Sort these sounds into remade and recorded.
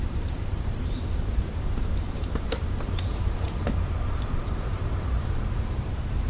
remade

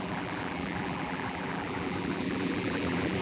remade